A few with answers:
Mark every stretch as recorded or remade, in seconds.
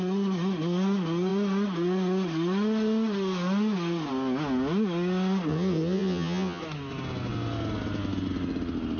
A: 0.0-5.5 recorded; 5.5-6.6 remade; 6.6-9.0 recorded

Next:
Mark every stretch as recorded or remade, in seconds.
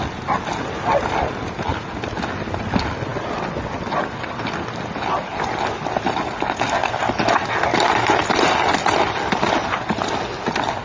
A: 0.0-10.8 recorded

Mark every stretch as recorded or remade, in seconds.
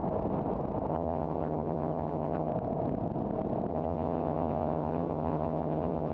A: 0.0-0.9 recorded; 0.9-2.5 remade; 2.5-3.7 recorded; 3.7-6.1 remade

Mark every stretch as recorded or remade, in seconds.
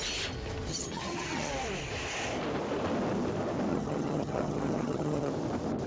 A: 0.0-0.7 recorded; 0.7-1.5 remade; 1.5-3.7 recorded; 3.7-5.3 remade; 5.3-5.9 recorded